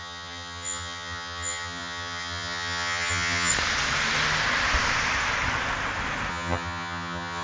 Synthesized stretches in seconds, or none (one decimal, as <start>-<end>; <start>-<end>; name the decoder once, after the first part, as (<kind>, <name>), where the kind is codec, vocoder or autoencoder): 0.0-3.5 (vocoder, HiFi-GAN); 6.3-7.4